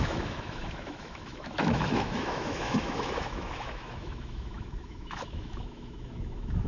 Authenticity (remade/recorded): remade